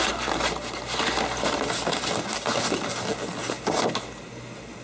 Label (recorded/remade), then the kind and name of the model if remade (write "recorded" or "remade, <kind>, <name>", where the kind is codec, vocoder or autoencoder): recorded